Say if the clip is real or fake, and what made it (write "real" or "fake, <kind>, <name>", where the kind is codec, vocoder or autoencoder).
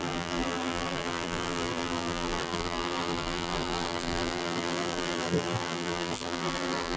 fake, vocoder, BigVGAN v2